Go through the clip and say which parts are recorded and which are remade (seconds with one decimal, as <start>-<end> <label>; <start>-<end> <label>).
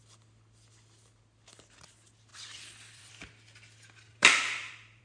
0.0-2.3 recorded; 2.3-3.1 remade; 3.1-4.2 recorded; 4.2-5.0 remade